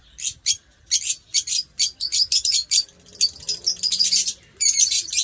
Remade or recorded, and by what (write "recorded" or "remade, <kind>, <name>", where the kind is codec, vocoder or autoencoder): recorded